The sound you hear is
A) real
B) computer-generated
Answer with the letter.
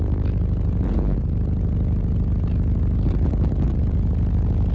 B